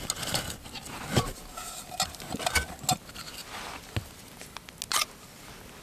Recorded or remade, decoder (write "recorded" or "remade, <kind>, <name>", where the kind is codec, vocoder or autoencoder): recorded